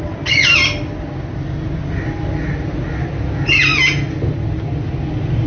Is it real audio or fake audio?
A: real